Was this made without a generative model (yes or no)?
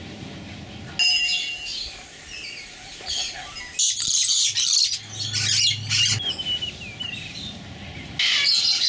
yes